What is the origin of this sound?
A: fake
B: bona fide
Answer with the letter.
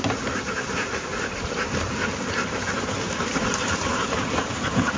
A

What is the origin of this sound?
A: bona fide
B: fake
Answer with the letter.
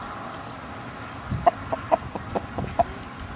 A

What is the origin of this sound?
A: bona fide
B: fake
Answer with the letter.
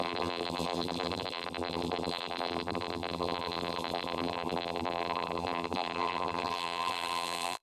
B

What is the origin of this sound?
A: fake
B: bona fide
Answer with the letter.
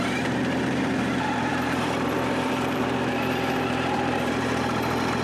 A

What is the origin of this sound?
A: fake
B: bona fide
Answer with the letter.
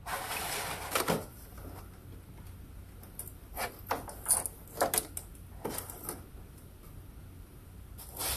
B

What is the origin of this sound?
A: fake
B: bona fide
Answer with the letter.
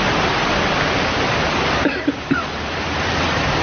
B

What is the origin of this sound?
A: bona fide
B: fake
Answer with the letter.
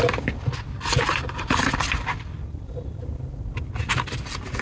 B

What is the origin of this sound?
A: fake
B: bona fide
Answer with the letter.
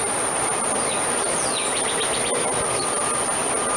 B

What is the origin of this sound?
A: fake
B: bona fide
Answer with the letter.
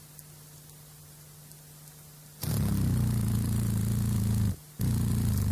B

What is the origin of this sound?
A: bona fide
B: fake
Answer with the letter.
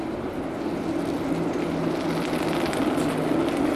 A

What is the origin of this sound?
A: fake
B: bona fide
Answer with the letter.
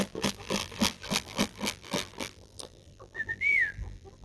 A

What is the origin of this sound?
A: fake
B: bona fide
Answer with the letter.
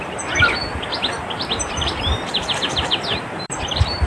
A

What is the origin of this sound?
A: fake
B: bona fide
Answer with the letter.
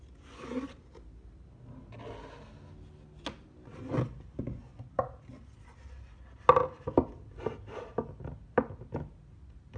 B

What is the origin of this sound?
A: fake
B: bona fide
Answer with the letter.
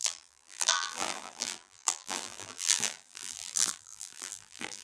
A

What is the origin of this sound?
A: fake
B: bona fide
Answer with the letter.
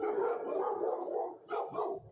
B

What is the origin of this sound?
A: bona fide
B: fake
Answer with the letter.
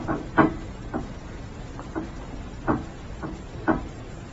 B